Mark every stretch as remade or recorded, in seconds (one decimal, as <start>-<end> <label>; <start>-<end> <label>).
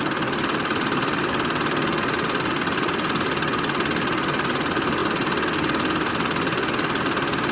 0.0-7.5 recorded